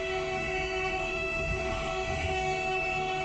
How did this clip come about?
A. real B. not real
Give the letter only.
B